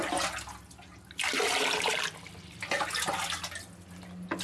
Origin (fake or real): real